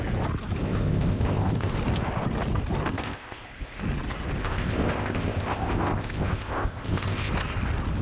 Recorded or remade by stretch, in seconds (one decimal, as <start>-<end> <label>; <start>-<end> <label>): 0.0-0.6 recorded; 0.6-1.7 remade; 1.7-2.9 recorded; 2.9-3.8 remade; 3.8-4.4 recorded; 4.4-7.3 remade; 7.3-8.0 recorded